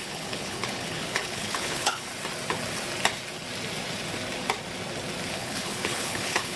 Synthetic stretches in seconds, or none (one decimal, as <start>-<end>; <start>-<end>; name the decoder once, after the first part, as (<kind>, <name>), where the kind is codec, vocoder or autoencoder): 0.0-2.1 (codec, HILCodec); 5.3-6.6